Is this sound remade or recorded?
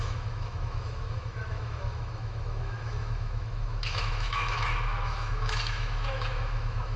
remade